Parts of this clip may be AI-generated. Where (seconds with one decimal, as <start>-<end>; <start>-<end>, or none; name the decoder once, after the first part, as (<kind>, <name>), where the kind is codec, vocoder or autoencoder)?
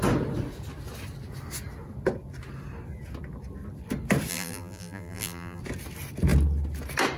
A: 4.3-5.6 (vocoder, BigVGAN v2)